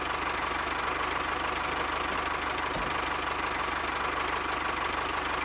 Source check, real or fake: real